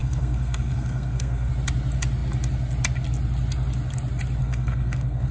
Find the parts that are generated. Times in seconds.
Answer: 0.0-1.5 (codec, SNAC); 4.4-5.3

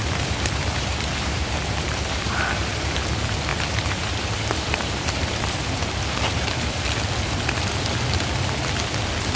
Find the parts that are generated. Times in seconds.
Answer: 0.0-2.8 (vocoder, BigVGAN v2); 3.5-6.8

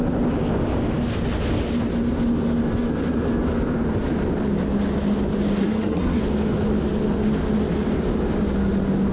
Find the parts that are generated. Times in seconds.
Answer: 5.6-6.2 (codec, SNAC)

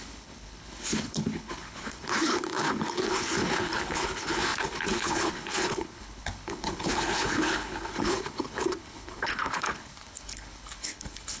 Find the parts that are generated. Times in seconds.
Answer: 0.0-11.4 (codec, HILCodec)

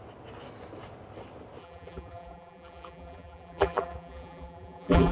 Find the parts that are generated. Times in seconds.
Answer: 1.6-5.1 (vocoder, BigVGAN v2)

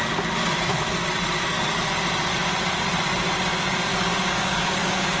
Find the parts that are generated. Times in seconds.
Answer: 3.9-5.2 (codec, DAC)

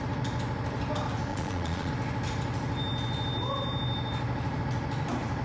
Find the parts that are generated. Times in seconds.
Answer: 1.3-1.9 (vocoder, Vocos)